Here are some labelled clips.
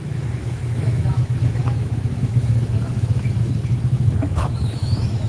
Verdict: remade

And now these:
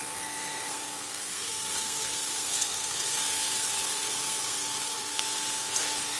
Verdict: remade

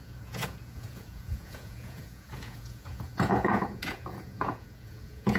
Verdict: remade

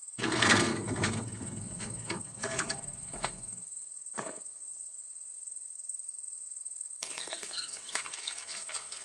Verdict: remade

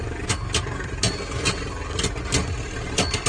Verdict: recorded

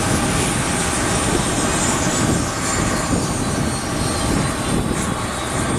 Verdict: recorded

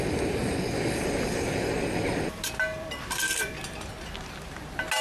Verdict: recorded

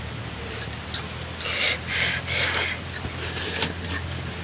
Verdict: recorded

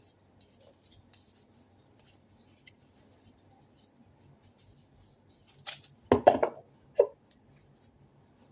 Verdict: recorded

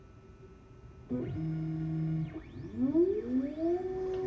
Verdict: recorded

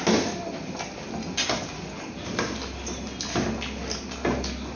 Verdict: recorded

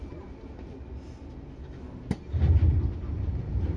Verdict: recorded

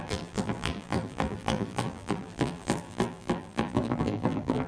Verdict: remade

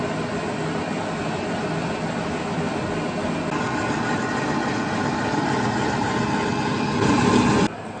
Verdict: recorded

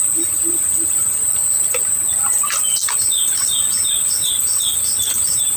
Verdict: recorded